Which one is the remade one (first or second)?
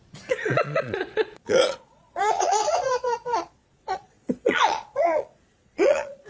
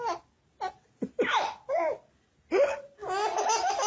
first